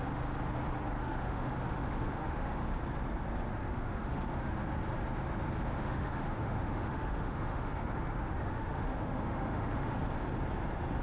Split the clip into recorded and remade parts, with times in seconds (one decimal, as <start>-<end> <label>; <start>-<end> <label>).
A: 0.0-1.0 recorded; 1.0-2.6 remade; 2.6-3.6 recorded; 3.6-4.5 remade; 4.5-5.8 recorded; 5.8-10.0 remade; 10.0-11.0 recorded